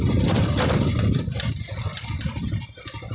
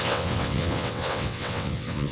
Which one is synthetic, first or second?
second